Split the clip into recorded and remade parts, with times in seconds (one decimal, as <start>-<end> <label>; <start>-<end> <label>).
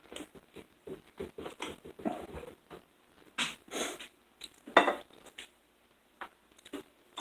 0.0-7.2 recorded